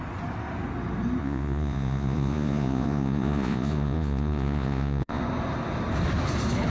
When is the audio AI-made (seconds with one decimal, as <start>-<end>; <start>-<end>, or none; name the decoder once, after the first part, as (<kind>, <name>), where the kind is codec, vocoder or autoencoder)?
1.2-5.2 (vocoder, Vocos)

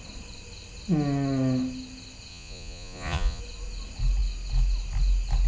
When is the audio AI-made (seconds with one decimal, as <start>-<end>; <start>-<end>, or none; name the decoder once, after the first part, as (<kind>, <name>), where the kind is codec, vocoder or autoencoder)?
2.3-3.4 (vocoder, Vocos)

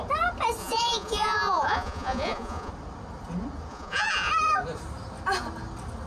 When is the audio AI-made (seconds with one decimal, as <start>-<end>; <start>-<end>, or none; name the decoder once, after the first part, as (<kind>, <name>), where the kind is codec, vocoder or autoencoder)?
0.6-2.7 (vocoder, Vocos); 3.7-4.3

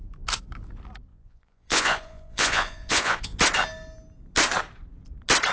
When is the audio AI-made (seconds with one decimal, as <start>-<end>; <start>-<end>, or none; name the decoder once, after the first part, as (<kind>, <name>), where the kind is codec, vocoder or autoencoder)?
1.1-3.4 (vocoder, Vocos)

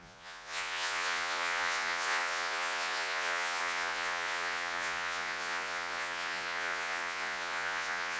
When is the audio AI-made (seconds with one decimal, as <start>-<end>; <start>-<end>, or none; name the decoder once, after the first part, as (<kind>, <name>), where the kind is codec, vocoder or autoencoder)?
0.0-8.2 (vocoder, Vocos)

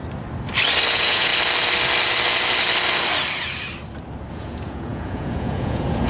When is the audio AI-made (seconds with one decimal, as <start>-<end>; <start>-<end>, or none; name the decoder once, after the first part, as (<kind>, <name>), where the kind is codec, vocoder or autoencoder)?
0.9-1.3 (vocoder, Vocos); 4.3-6.1